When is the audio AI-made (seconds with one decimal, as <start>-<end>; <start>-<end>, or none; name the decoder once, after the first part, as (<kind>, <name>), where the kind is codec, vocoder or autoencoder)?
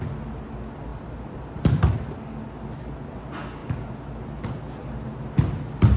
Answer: 0.9-2.2 (vocoder, BigVGAN v2)